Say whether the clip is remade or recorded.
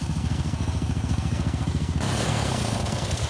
remade